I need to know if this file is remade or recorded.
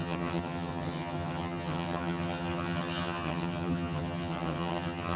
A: remade